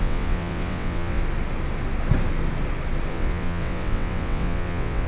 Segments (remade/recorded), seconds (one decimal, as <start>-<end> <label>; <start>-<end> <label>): 0.0-1.2 remade; 1.2-3.1 recorded; 3.1-5.1 remade